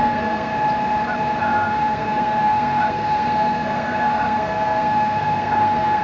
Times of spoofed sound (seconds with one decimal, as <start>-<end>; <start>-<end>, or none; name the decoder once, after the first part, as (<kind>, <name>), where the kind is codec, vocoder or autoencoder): 0.0-0.5 (codec, SNAC); 1.4-6.0